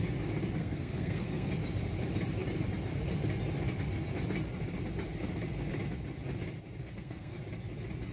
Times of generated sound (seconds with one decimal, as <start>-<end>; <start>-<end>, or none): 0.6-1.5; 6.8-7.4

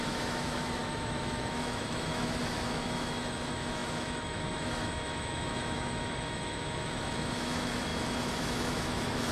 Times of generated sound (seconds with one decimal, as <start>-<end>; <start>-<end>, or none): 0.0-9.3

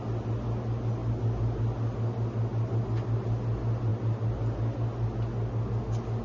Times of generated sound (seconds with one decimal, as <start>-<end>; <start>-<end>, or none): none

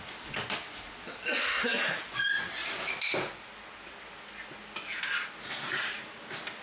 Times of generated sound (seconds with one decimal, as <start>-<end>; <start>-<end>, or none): none

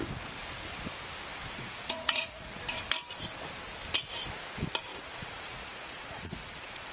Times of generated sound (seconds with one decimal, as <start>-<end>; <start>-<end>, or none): 1.6-2.6; 4.9-6.9